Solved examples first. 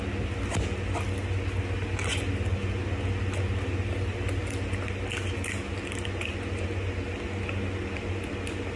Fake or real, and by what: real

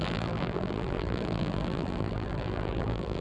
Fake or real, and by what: fake, vocoder, BigVGAN v2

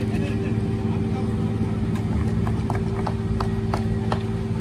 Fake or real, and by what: real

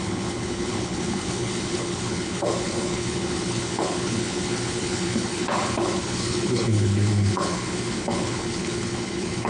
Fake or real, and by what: fake, codec, HILCodec